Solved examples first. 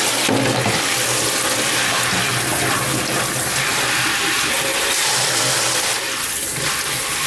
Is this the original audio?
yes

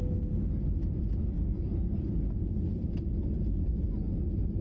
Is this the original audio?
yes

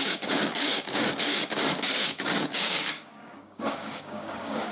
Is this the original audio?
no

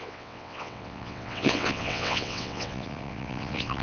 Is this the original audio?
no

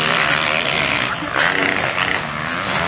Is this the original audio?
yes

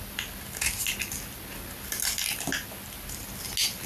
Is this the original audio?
yes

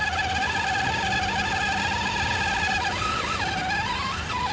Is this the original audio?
yes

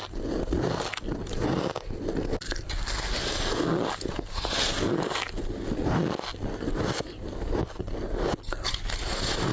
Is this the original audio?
yes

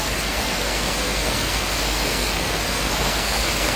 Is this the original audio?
no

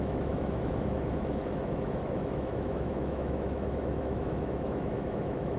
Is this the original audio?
no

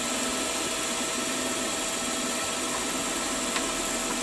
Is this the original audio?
yes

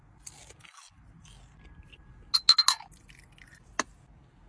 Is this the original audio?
yes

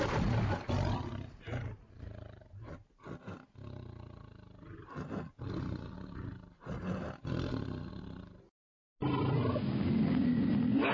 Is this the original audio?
yes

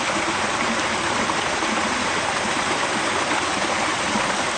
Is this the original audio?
yes